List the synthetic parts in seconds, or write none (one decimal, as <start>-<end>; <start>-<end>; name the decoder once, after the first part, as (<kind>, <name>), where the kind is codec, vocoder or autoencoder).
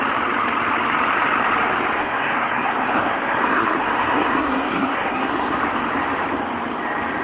2.0-5.6 (codec, SNAC)